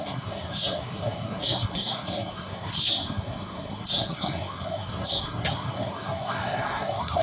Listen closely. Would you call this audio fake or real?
fake